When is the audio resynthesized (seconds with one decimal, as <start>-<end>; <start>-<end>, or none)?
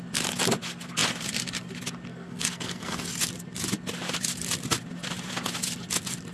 2.1-3.2